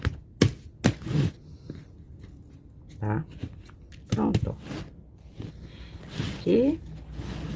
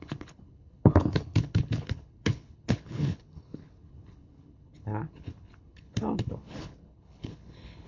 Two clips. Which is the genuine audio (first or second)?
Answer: first